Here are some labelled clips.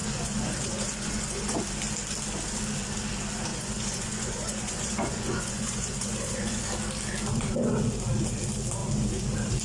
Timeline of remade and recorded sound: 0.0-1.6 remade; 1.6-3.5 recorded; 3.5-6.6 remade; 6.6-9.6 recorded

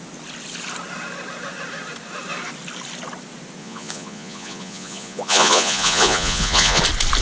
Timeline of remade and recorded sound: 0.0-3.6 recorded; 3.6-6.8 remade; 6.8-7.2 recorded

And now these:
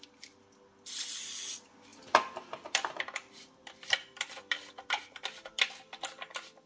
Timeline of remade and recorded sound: 0.0-6.7 recorded

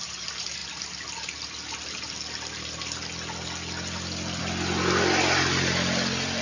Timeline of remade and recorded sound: 0.0-6.4 recorded